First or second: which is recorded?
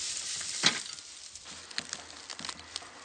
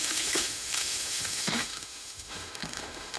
first